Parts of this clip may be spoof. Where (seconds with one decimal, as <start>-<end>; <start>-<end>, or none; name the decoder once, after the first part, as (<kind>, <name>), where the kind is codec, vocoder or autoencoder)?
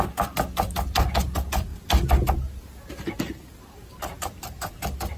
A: none